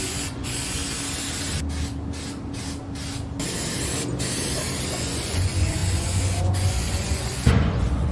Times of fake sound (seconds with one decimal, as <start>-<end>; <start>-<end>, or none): 0.0-0.8; 4.9-8.1